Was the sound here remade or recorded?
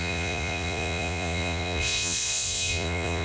remade